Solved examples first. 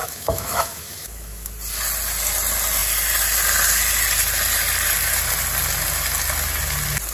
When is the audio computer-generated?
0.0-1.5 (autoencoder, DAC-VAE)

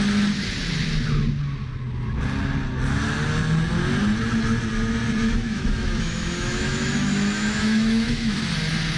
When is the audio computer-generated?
5.2-8.4 (autoencoder, DAC-VAE)